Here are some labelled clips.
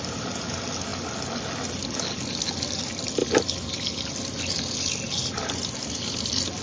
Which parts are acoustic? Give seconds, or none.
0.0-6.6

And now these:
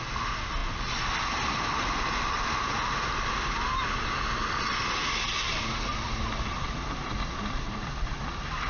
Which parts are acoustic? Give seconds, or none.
0.0-8.7

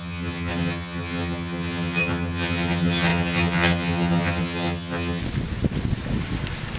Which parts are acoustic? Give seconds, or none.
5.2-6.8

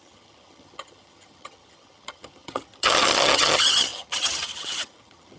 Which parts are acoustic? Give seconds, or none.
none

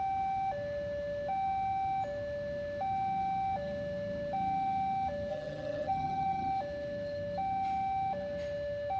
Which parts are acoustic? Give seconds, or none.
0.0-5.3; 6.5-9.0

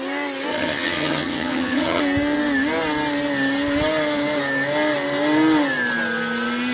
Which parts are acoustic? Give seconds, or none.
0.0-0.5; 2.0-6.7